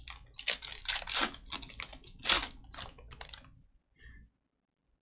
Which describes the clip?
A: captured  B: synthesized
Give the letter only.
A